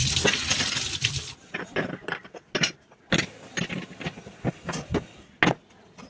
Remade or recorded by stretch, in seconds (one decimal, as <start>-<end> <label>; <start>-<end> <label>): 0.0-6.1 recorded